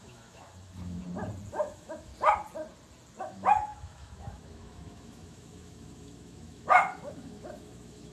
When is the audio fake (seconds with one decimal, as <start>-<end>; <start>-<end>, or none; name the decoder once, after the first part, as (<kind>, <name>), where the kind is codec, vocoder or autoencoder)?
0.0-1.0 (autoencoder, DAC-VAE); 1.5-2.1; 3.2-8.1